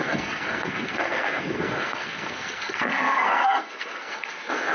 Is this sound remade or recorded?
remade